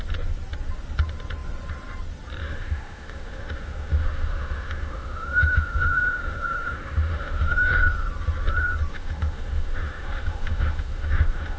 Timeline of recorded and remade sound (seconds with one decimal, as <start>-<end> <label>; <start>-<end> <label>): 0.0-2.4 recorded; 2.4-7.7 remade; 7.7-8.9 recorded; 8.9-11.6 remade